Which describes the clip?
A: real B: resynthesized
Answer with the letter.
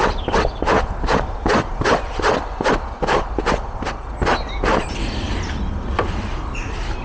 A